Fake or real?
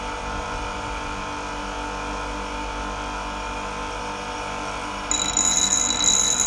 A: real